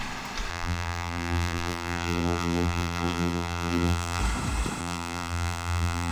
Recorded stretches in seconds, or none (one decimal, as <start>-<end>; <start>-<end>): 0.0-0.5; 4.2-4.8